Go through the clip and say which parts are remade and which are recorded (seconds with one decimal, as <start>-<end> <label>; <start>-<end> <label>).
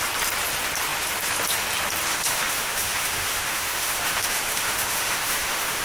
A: 0.0-2.1 recorded; 2.1-5.8 remade